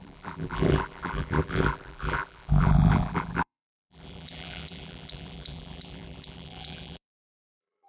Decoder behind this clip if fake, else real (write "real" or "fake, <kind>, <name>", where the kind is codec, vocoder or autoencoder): fake, vocoder, BigVGAN v2